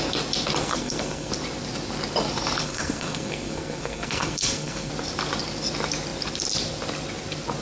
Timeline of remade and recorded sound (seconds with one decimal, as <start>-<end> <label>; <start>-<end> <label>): 0.0-0.6 recorded; 0.6-1.3 remade; 1.3-2.6 recorded; 2.6-4.9 remade; 4.9-7.6 recorded